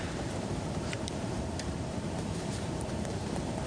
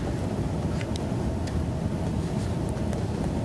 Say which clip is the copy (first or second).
first